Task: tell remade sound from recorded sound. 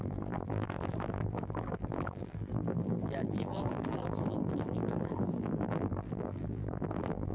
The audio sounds remade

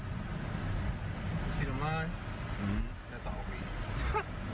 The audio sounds recorded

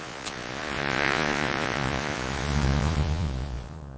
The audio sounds remade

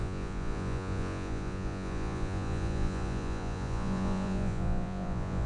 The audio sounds remade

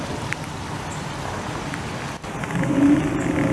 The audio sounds recorded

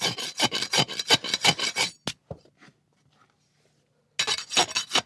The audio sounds recorded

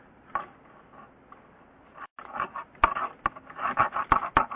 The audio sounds recorded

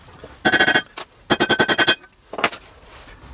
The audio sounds recorded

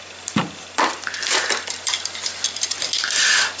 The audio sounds recorded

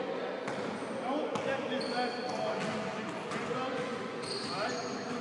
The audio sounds recorded